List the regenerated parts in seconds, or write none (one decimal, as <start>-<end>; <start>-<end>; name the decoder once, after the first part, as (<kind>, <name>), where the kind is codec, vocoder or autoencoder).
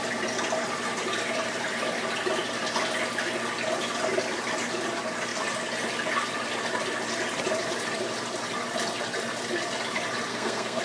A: 10.3-10.8 (codec, SNAC)